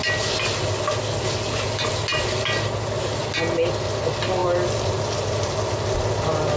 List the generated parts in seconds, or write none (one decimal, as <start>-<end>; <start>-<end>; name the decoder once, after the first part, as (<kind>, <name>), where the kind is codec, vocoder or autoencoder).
none